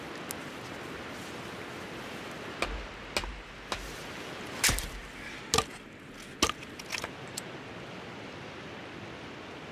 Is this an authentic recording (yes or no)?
yes